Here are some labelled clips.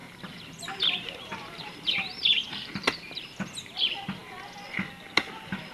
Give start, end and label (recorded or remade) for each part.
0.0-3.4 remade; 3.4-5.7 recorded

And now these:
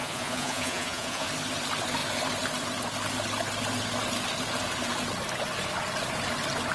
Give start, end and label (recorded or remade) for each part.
0.0-1.3 remade; 1.3-6.7 recorded

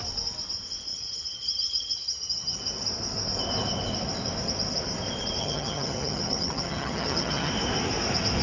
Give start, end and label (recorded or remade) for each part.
0.0-0.9 recorded; 0.9-2.6 remade; 2.6-5.4 recorded; 5.4-7.5 remade; 7.5-8.4 recorded

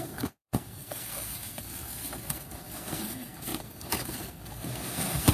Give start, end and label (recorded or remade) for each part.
0.0-5.3 remade

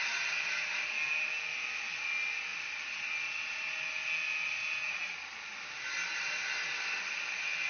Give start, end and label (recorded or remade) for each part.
0.0-7.7 recorded

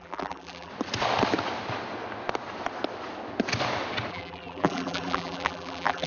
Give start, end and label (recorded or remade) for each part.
0.0-0.7 remade; 0.7-4.1 recorded; 4.1-6.1 remade

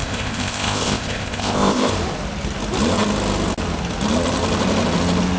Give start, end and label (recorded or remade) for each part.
0.0-1.9 remade; 1.9-5.4 recorded